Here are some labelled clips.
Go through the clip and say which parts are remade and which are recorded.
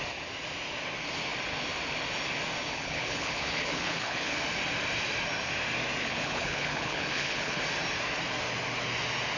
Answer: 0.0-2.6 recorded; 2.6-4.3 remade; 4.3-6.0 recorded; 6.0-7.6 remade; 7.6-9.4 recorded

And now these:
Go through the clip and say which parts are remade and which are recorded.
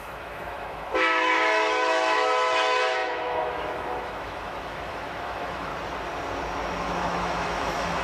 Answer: 0.0-5.7 remade; 5.7-6.8 recorded; 6.8-8.0 remade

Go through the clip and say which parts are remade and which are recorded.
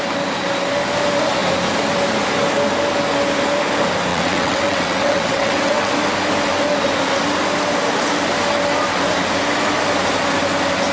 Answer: 0.0-4.1 recorded; 4.1-5.9 remade; 5.9-10.9 recorded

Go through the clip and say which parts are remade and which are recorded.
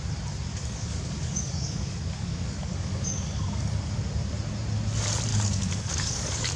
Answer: 0.0-0.5 recorded; 0.5-4.0 remade; 4.0-5.3 recorded; 5.3-6.6 remade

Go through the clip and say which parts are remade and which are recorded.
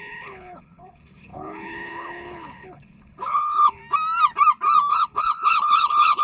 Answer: 0.0-3.8 remade; 3.8-4.9 recorded; 4.9-6.2 remade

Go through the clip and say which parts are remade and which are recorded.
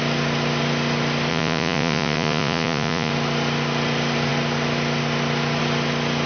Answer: 0.0-1.3 recorded; 1.3-3.1 remade; 3.1-6.3 recorded